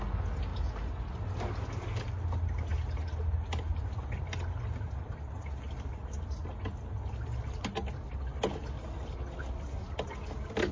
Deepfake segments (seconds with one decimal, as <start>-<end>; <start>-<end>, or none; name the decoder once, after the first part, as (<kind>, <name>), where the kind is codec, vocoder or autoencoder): none